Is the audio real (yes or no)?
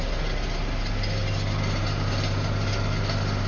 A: yes